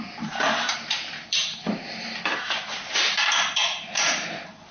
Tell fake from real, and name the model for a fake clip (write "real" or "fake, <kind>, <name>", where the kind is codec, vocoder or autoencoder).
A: fake, vocoder, BigVGAN v2